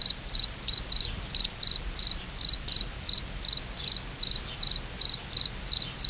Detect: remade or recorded recorded